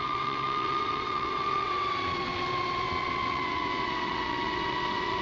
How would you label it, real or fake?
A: fake